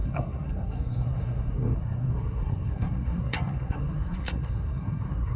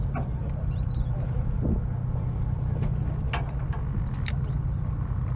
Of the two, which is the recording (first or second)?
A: second